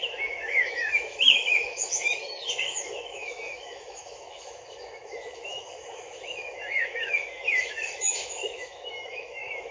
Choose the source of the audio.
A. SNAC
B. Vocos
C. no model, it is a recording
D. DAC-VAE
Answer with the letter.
D